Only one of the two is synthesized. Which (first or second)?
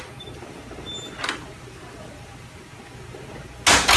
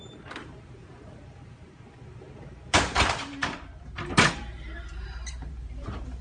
second